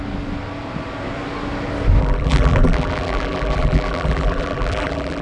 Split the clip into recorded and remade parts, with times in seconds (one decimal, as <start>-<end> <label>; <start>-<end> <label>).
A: 0.0-2.0 recorded; 2.0-5.2 remade